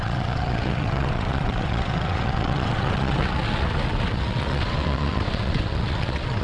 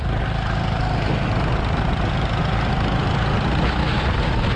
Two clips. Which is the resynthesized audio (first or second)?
first